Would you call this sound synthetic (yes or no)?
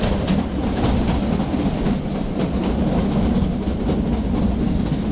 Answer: no